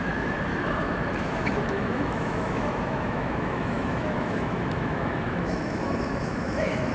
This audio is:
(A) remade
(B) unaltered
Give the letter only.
A